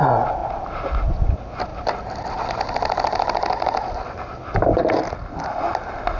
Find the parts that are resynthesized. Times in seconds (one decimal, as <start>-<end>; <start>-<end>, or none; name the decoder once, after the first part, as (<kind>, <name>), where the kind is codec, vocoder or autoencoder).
none